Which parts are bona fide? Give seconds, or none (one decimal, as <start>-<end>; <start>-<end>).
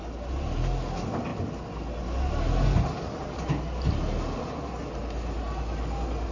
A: 0.0-6.3